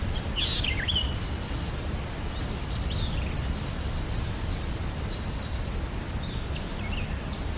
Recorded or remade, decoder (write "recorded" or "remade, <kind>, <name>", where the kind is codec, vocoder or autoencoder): recorded